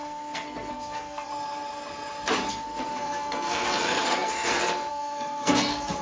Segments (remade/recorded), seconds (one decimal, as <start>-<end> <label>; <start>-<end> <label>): 0.0-1.3 remade; 1.3-2.5 recorded; 2.5-6.0 remade